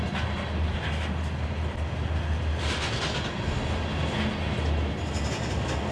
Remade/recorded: recorded